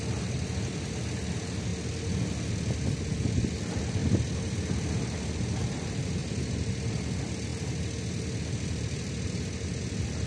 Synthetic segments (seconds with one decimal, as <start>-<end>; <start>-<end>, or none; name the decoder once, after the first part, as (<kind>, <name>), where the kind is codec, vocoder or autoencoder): 6.2-6.7 (vocoder, BigVGAN v2)